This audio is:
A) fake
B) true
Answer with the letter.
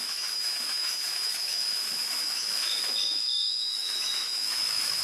A